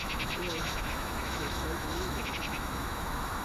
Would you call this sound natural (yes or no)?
no